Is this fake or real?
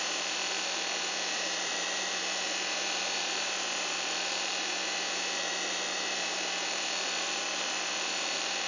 fake